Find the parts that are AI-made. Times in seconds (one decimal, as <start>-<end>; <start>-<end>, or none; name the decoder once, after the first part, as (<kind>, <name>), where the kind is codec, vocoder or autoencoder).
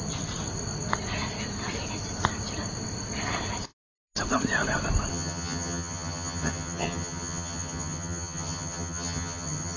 5.1-9.8 (vocoder, HiFi-GAN)